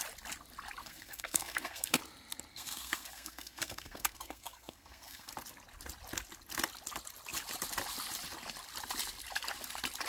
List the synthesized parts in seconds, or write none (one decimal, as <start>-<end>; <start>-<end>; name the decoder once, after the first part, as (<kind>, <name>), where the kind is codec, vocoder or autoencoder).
0.8-2.0 (codec, SNAC); 2.5-5.3